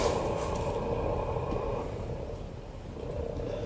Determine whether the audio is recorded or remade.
recorded